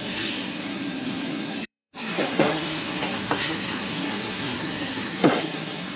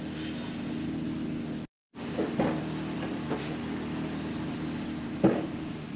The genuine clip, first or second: second